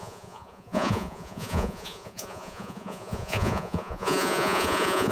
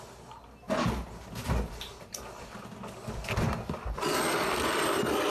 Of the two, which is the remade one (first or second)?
first